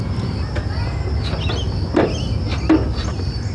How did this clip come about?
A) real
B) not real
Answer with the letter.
A